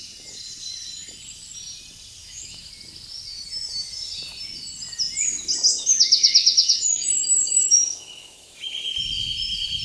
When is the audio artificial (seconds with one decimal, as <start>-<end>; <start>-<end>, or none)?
2.2-2.7; 5.7-8.6